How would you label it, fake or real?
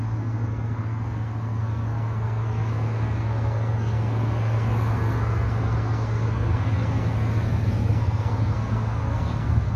fake